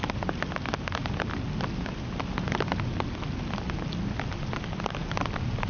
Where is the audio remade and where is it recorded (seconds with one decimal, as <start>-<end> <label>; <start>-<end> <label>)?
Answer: 0.0-5.7 recorded